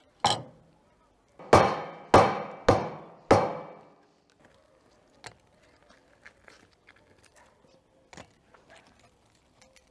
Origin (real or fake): real